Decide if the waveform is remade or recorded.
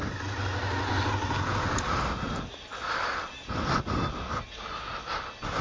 recorded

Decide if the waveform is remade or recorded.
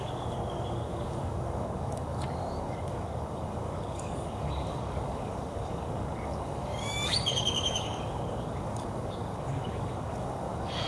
remade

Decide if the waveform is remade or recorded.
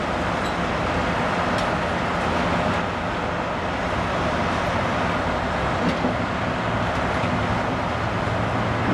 recorded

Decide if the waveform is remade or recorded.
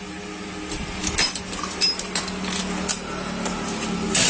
recorded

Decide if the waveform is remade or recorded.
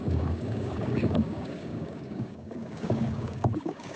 remade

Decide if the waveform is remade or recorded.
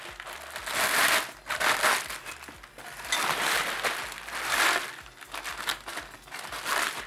recorded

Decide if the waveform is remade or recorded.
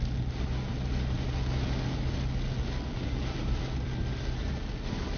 recorded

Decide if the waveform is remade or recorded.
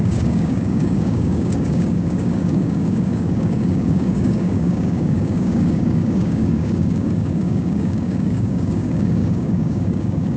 remade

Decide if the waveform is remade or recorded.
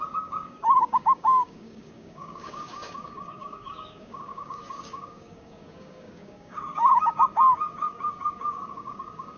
remade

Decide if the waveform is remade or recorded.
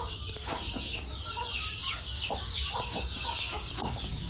remade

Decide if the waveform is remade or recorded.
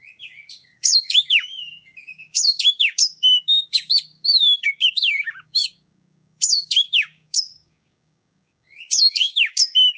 remade